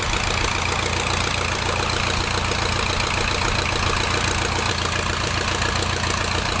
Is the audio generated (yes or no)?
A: no